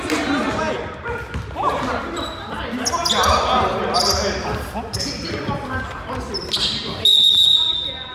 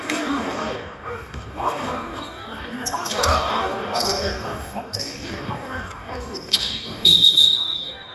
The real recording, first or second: first